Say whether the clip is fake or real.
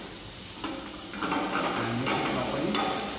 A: real